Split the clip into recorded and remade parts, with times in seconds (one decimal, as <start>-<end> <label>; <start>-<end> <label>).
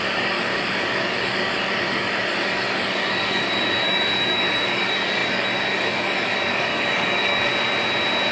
0.0-7.5 remade; 7.5-8.3 recorded